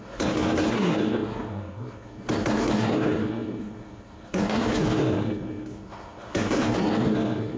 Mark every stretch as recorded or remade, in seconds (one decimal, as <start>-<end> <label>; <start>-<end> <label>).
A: 0.0-7.6 remade